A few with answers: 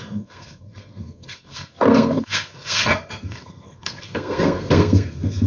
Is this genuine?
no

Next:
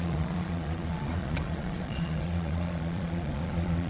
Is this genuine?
no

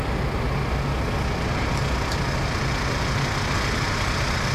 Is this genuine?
yes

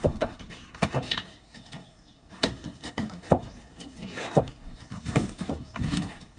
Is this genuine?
no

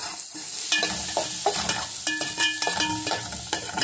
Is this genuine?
yes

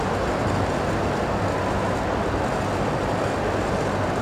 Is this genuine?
yes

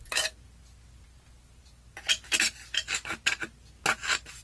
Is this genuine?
yes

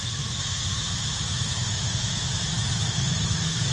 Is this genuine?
no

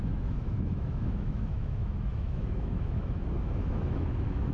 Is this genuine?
no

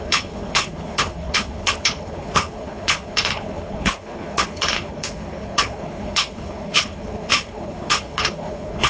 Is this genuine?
no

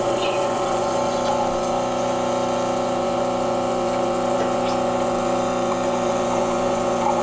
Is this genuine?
no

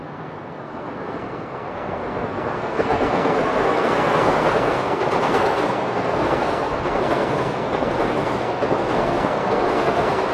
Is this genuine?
no